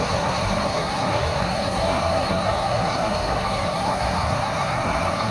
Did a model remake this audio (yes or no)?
yes